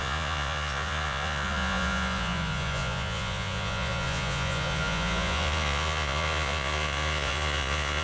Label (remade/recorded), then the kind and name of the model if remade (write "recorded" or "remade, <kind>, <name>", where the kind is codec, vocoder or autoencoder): remade, vocoder, Vocos